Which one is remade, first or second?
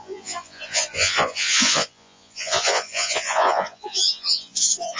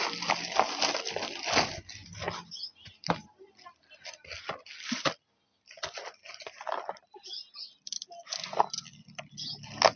first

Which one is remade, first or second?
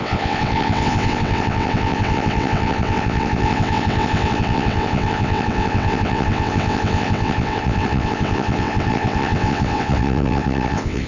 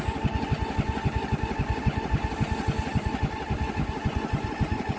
first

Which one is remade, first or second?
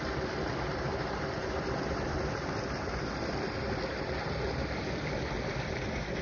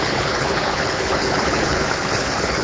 second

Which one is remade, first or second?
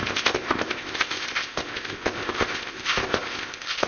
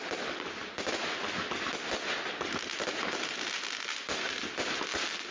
first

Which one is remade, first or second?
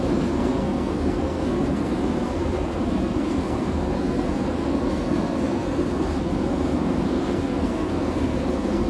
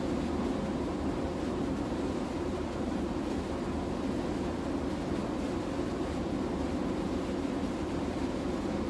first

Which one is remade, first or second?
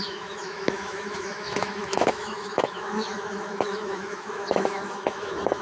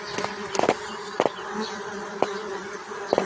first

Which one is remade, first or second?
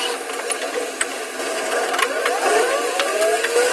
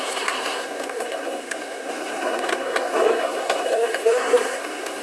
second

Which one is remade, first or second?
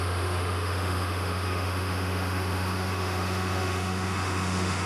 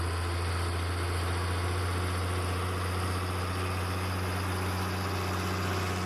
first